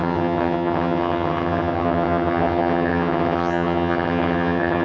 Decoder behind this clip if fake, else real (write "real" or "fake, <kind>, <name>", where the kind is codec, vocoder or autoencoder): fake, vocoder, HiFi-GAN